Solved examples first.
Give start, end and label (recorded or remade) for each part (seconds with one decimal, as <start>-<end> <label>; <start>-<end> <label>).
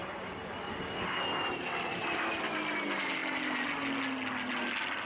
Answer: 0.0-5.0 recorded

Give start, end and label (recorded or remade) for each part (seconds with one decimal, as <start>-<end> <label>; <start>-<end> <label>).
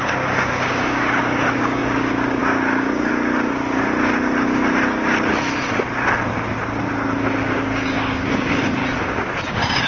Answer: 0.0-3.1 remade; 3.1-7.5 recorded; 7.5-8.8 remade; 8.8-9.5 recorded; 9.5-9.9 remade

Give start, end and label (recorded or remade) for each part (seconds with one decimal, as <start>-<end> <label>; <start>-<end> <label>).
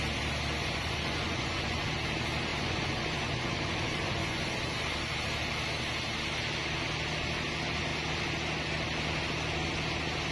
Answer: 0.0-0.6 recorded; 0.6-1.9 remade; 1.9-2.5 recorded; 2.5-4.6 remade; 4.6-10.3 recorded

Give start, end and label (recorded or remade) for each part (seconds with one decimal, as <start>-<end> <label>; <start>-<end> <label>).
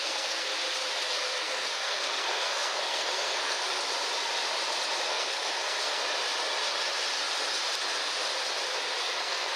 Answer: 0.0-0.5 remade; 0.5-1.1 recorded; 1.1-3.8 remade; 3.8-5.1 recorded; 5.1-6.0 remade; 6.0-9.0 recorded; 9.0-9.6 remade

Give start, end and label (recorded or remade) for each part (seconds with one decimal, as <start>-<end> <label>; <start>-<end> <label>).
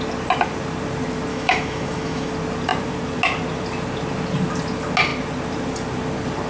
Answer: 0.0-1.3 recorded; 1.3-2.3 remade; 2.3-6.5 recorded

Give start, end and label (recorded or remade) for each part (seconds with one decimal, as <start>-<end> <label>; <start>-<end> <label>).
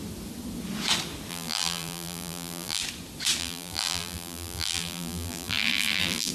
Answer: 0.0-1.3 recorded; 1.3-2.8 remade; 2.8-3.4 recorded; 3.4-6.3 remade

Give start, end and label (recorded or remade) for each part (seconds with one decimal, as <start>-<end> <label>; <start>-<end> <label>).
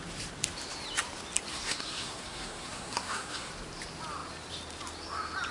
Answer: 0.0-1.5 recorded; 1.5-3.5 remade; 3.5-5.5 recorded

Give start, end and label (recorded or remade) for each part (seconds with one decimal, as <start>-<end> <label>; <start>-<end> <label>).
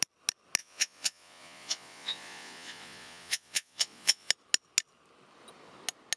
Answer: 0.0-0.6 recorded; 0.6-4.3 remade; 4.3-6.2 recorded